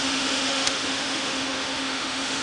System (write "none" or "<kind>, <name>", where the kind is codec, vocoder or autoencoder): autoencoder, DAC-VAE